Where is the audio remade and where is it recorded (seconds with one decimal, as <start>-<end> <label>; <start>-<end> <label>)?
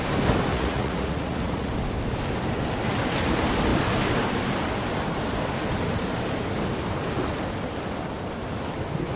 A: 0.0-0.5 recorded; 0.5-1.7 remade; 1.7-9.2 recorded